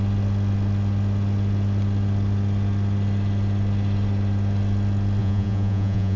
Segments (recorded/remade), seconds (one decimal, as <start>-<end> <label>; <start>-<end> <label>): 0.0-5.2 recorded; 5.2-6.2 remade